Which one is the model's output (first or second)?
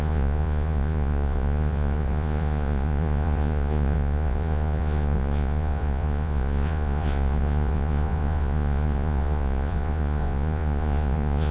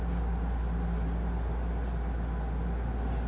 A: first